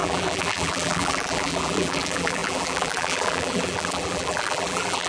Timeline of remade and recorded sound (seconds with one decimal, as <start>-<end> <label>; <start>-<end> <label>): 0.0-5.1 remade